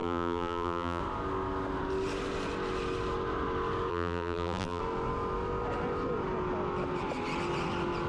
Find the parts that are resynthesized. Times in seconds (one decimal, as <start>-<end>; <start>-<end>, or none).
0.0-1.0; 3.9-4.8

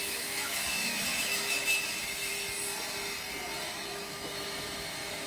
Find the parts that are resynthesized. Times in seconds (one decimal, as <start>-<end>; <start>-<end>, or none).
0.0-2.3; 3.6-5.3

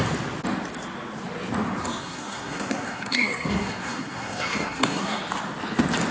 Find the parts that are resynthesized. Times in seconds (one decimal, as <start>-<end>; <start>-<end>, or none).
1.8-5.2

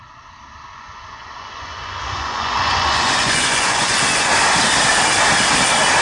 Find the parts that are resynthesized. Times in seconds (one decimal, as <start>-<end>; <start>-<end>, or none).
0.7-4.3

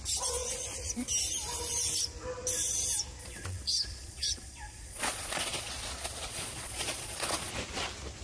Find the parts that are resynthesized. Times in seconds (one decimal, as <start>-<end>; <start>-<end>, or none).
0.4-1.1; 3.2-7.5

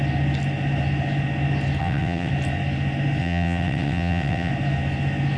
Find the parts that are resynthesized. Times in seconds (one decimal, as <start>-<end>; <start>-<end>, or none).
1.8-2.3; 3.2-4.5

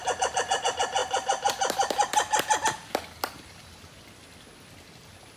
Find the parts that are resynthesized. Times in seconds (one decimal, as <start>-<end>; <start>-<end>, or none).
0.0-0.6; 1.0-3.8